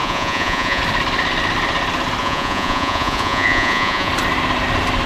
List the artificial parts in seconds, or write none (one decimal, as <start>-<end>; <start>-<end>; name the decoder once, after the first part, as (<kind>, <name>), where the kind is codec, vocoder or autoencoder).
0.0-0.8 (vocoder, Vocos); 2.2-4.1